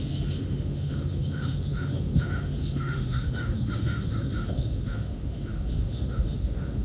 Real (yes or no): no